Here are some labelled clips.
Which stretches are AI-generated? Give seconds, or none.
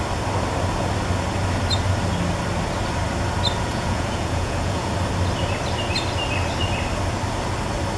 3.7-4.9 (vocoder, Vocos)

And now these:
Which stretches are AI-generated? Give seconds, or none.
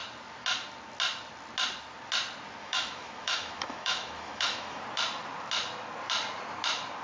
2.6-4.8 (autoencoder, DAC-VAE)